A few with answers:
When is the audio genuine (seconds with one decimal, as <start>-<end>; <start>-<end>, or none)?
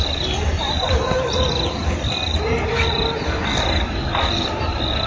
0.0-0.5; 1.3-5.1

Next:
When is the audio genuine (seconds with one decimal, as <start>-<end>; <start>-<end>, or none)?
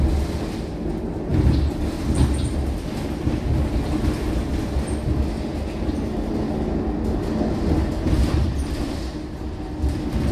0.0-10.3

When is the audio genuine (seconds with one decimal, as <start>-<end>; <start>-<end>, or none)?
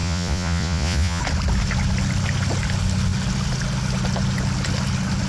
1.2-5.3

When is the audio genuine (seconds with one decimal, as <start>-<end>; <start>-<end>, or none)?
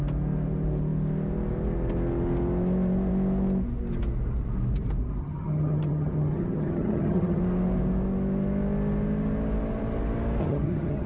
0.0-5.2; 7.4-10.4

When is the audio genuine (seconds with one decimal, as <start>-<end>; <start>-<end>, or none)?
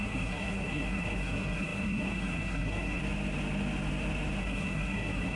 3.0-4.4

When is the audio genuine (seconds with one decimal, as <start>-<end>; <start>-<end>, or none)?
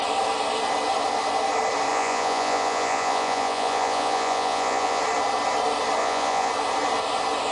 0.0-1.9; 5.0-6.0; 6.5-7.5